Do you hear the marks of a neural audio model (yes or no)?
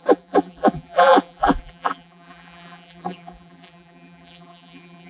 yes